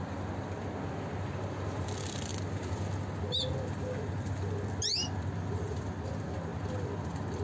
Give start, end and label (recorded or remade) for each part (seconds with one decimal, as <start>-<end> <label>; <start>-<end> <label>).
0.0-7.4 recorded